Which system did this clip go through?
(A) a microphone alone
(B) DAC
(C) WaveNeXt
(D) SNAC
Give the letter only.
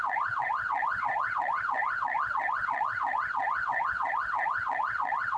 C